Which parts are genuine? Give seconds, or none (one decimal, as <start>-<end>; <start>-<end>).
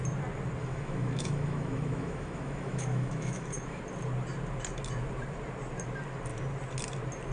0.0-0.6; 3.8-7.3